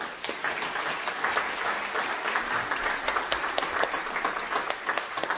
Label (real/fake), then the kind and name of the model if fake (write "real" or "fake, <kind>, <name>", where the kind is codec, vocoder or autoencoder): real